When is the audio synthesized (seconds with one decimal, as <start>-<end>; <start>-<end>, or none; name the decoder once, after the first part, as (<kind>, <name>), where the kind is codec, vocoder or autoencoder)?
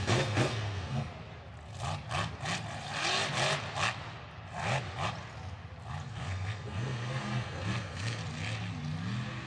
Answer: 0.0-1.1 (codec, SNAC); 6.1-8.2